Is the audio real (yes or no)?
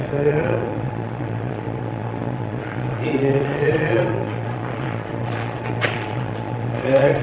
no